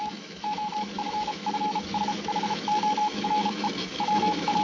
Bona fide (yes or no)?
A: no